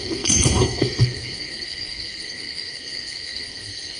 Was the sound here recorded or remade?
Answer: remade